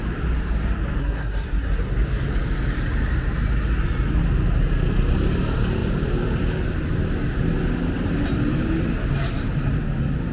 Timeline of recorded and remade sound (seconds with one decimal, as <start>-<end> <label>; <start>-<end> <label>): 0.0-1.0 recorded; 1.0-1.9 remade; 1.9-10.3 recorded